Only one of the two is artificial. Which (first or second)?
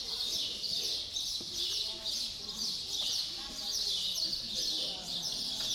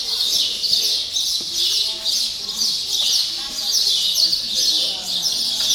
first